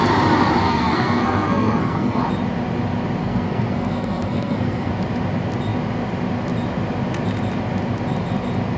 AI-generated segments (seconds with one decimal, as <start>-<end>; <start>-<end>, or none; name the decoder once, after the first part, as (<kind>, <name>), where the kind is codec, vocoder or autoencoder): 0.6-2.2 (codec, SNAC); 3.2-4.9